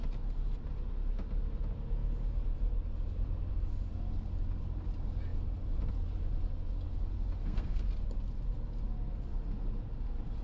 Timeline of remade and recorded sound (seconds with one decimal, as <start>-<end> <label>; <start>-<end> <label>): 0.0-7.4 recorded; 7.4-7.9 remade; 7.9-10.4 recorded